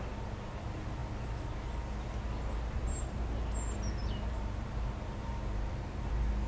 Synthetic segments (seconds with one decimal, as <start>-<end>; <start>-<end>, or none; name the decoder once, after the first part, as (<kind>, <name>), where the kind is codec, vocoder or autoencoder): 2.8-3.4 (vocoder, BigVGAN v2); 4.0-6.1